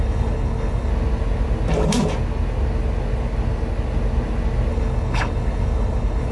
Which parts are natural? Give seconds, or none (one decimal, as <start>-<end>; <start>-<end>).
0.9-4.7